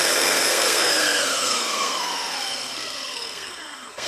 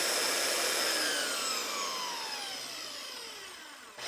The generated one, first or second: first